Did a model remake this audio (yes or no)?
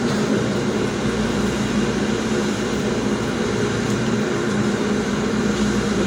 yes